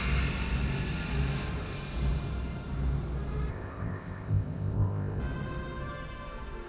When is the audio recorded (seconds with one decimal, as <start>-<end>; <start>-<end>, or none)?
0.0-3.5; 5.2-6.7